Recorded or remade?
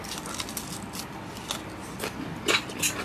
recorded